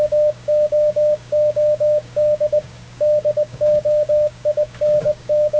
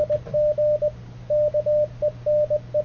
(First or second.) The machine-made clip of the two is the first